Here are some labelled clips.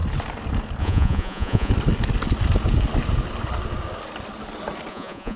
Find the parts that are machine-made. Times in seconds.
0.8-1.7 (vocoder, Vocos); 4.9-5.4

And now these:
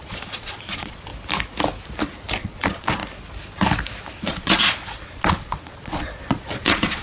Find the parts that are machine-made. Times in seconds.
0.0-1.1 (vocoder, Vocos); 2.4-3.0; 4.2-7.0

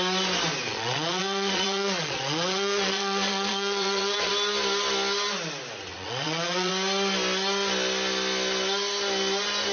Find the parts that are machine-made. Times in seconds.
0.7-4.3 (vocoder, Vocos); 5.9-6.7

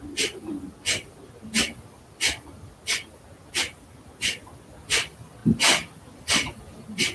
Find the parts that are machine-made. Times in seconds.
none

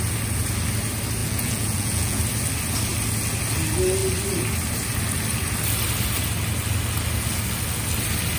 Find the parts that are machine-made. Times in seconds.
1.2-2.2 (vocoder, Vocos)